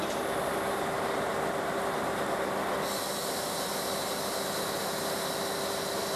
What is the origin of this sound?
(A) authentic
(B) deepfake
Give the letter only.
A